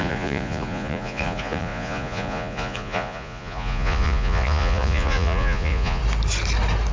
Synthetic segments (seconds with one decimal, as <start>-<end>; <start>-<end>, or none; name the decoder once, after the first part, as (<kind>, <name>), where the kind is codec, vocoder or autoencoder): 0.0-6.0 (vocoder, Vocos)